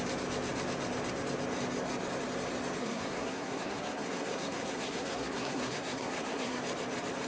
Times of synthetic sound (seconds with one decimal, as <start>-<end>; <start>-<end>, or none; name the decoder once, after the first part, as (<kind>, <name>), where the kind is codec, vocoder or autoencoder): 2.8-6.6 (codec, SNAC)